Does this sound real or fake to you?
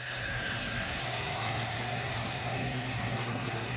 fake